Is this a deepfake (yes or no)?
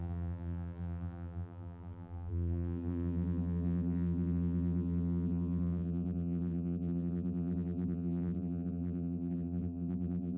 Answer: yes